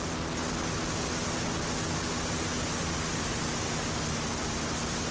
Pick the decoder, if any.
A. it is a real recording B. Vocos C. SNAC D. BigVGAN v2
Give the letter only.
A